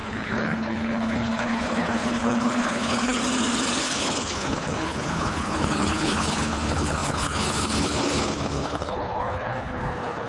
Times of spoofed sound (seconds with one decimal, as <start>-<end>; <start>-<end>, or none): 0.0-3.2; 3.8-10.3